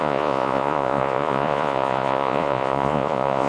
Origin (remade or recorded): remade